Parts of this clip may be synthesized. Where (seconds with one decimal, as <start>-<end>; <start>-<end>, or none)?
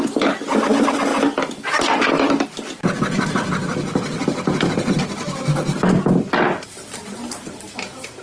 1.1-4.9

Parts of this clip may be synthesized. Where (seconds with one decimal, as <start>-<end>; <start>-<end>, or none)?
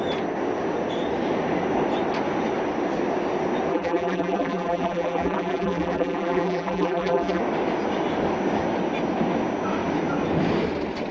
3.7-7.4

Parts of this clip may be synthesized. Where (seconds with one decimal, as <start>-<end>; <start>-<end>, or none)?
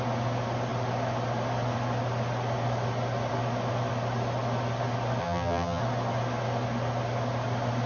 5.2-5.8